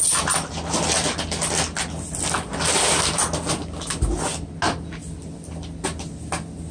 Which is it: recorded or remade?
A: recorded